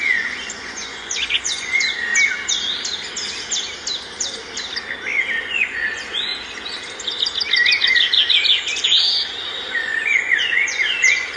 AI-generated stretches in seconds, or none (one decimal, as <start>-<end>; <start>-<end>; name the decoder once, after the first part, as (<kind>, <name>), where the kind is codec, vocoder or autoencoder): 0.0-2.1 (vocoder, Vocos); 5.4-6.3; 9.7-11.4